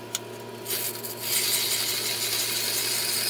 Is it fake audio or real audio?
real